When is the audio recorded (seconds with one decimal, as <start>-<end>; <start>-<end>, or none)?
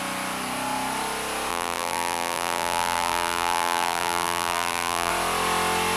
0.0-1.5; 5.1-6.0